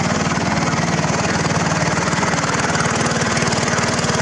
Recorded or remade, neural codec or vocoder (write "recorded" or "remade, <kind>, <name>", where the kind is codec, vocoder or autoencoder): remade, vocoder, Vocos